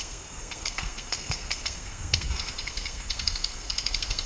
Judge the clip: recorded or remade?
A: remade